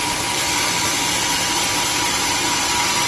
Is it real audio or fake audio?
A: fake